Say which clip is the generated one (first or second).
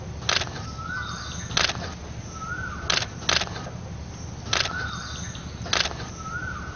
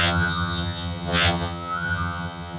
second